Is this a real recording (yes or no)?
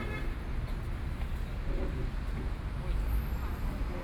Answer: yes